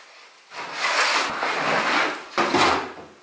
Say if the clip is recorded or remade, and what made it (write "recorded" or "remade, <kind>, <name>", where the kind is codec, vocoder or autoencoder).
recorded